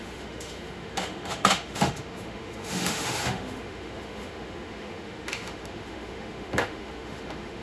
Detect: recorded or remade remade